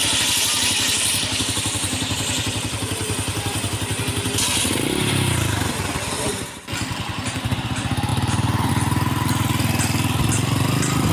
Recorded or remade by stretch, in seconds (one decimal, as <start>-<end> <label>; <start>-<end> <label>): 0.0-11.1 recorded